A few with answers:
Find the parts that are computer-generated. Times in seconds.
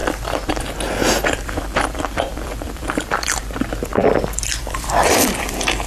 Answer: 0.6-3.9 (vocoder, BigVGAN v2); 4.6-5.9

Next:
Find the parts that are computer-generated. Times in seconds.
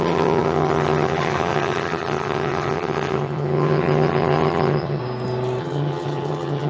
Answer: 0.0-5.0 (vocoder, HiFi-GAN); 5.6-6.7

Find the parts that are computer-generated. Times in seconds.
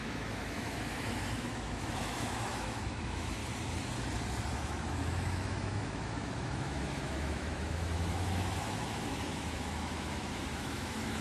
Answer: 0.0-3.4 (autoencoder, DAC-VAE); 4.5-11.2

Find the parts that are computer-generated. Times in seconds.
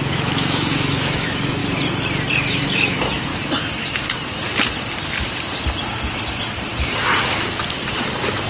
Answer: 0.0-1.6 (autoencoder, DAC-VAE); 2.3-3.3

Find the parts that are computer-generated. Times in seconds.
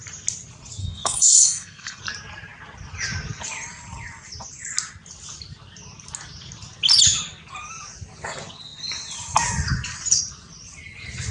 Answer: 0.8-2.0 (codec, SNAC)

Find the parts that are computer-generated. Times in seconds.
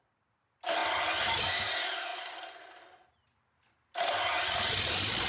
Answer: none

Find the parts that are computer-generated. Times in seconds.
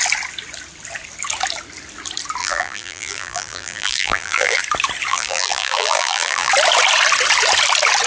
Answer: 2.4-4.6 (vocoder, BigVGAN v2); 5.1-6.5